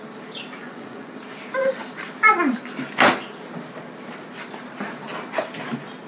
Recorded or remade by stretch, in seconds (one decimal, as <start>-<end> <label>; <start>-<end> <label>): 0.0-0.6 recorded; 0.6-1.2 remade; 1.2-6.1 recorded